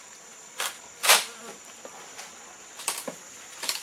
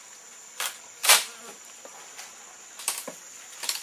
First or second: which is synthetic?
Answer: first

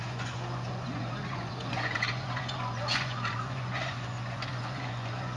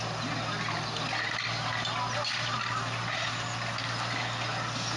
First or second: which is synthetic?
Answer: first